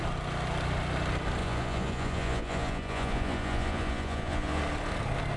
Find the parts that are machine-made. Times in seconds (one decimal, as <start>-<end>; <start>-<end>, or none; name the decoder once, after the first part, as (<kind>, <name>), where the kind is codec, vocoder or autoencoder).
1.4-4.6 (vocoder, Vocos)